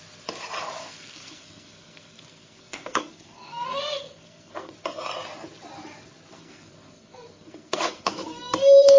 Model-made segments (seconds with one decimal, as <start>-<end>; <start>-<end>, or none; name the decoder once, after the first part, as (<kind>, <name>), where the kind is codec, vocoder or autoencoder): 0.8-4.7 (codec, SNAC); 6.3-9.0